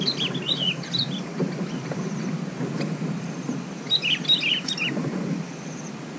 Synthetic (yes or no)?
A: yes